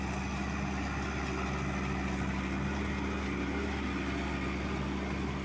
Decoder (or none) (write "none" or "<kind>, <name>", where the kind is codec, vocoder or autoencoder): none